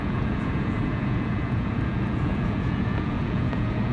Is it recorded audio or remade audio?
remade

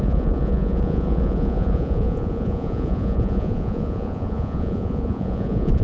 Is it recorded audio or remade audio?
remade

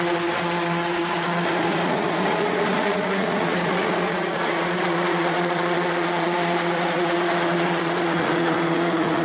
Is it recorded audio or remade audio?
remade